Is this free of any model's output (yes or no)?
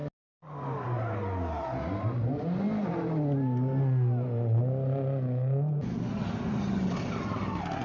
yes